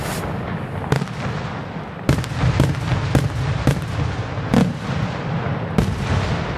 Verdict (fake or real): real